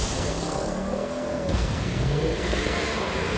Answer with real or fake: fake